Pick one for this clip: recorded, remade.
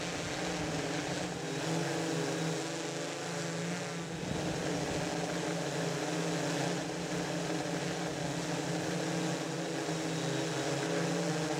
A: recorded